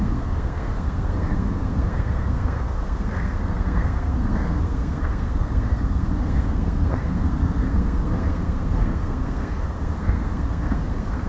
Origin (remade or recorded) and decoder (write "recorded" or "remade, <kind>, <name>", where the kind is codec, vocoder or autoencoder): remade, codec, SNAC